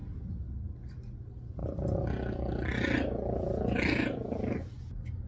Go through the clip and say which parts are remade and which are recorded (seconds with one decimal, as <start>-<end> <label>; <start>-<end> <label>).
0.0-5.3 recorded